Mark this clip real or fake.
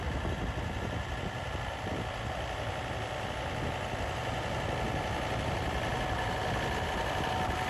real